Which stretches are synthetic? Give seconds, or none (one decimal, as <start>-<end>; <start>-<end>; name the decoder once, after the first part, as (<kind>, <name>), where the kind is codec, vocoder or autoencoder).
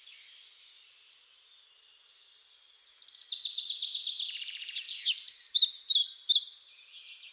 none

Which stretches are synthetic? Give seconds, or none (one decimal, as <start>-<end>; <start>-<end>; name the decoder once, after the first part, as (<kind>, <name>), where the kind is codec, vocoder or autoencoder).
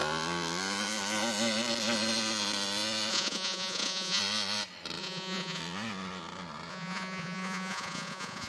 3.1-4.2 (vocoder, Vocos); 5.0-5.6; 6.7-8.5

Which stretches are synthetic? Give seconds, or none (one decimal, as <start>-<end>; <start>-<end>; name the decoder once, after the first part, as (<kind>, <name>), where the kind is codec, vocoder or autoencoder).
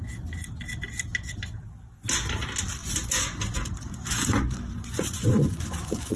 2.8-6.2 (vocoder, Vocos)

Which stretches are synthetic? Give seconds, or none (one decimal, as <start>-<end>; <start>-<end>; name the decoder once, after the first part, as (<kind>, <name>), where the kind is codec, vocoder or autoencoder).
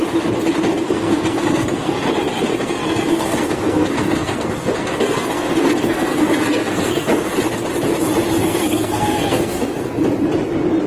0.7-1.9 (codec, SNAC); 2.5-7.3; 8.4-10.0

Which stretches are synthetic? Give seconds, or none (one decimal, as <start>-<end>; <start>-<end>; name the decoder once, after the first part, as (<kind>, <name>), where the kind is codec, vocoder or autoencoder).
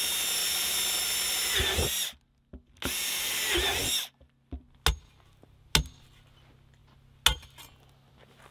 none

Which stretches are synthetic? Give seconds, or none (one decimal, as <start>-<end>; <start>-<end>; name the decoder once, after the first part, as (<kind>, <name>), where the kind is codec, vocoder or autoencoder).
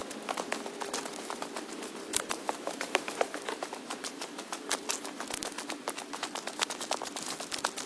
2.1-4.4 (vocoder, BigVGAN v2)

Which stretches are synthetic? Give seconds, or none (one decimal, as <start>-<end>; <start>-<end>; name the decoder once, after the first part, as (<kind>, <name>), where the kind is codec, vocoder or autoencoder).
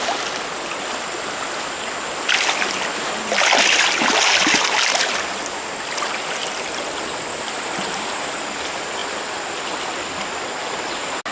none